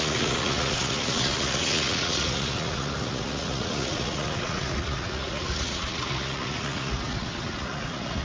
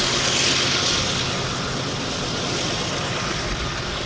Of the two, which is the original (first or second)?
second